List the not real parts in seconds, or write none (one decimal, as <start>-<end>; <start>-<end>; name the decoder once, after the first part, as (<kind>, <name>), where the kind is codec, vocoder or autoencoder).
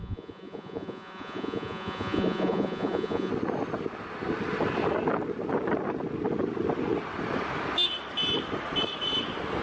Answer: 0.0-3.3 (vocoder, Vocos)